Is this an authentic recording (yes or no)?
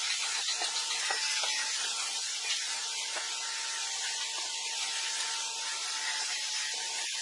yes